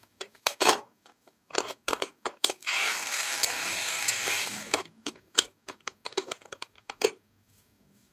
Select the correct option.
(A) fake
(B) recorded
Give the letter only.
A